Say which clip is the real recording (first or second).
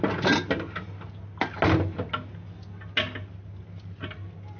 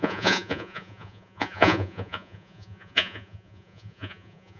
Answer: first